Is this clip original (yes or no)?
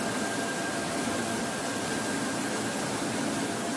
yes